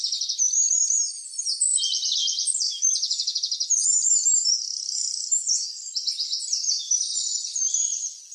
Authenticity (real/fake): fake